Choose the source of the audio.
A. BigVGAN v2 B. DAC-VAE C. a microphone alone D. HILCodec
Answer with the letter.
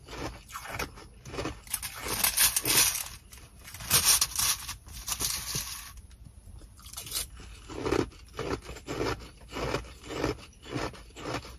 C